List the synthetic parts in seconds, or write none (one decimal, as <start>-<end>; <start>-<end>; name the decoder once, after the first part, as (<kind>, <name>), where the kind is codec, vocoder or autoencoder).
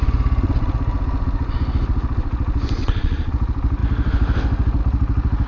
2.8-3.3 (vocoder, Vocos)